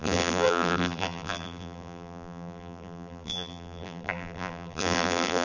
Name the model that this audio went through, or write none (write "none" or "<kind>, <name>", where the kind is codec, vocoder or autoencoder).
vocoder, BigVGAN v2